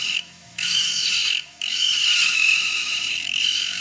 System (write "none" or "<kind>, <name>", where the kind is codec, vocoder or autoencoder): autoencoder, DAC-VAE